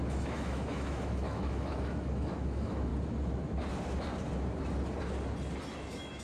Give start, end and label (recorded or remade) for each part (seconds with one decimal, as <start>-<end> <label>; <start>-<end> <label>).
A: 0.0-2.9 remade; 2.9-5.6 recorded; 5.6-6.2 remade